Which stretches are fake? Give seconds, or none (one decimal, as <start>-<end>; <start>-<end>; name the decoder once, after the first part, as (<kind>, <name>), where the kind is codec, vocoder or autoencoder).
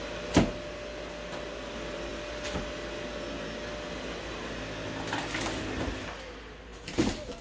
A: none